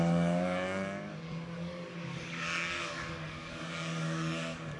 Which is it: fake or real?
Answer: fake